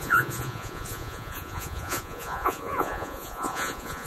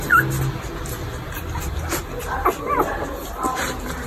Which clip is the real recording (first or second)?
second